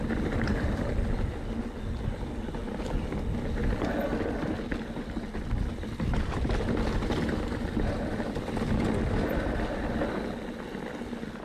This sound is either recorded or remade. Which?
recorded